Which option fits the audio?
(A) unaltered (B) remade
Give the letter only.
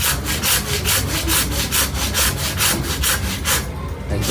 A